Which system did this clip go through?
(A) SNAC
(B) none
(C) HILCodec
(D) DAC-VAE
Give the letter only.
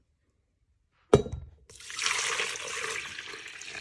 B